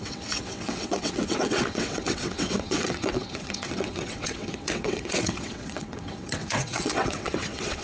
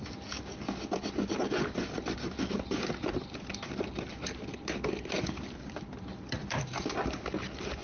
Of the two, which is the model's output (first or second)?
first